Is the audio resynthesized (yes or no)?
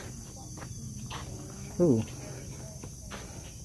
no